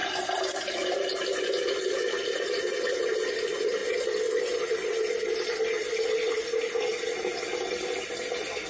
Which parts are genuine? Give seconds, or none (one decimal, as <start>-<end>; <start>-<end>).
1.4-3.8; 5.0-8.7